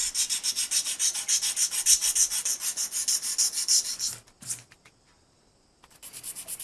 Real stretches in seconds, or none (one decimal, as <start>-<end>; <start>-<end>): 0.0-6.6